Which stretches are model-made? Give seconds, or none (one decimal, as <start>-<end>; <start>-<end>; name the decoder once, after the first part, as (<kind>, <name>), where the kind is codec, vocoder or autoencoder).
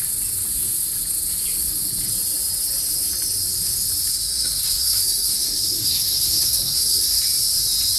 4.1-7.2 (codec, SNAC)